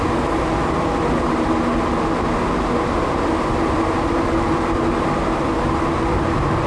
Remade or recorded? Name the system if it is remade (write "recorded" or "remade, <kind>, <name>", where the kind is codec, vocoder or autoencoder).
recorded